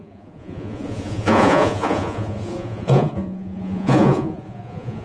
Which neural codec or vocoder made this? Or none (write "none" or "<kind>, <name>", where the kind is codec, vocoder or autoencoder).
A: vocoder, Vocos